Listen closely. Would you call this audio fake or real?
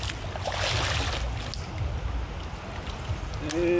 real